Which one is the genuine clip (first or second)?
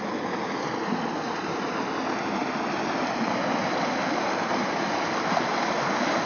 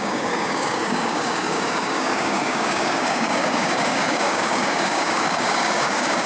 first